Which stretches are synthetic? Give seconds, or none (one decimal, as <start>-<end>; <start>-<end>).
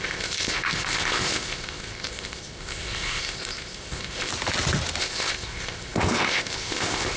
0.0-4.3; 5.0-7.2